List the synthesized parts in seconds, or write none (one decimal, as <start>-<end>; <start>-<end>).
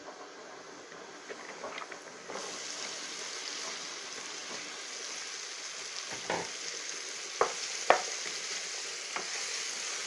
none